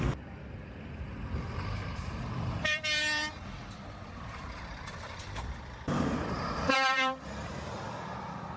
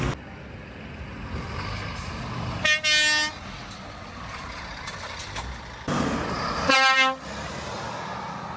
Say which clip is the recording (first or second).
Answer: second